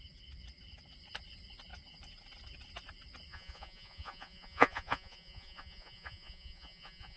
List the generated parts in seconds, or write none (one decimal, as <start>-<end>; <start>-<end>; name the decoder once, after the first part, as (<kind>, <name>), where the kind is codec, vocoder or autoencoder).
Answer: 3.3-7.2 (vocoder, Vocos)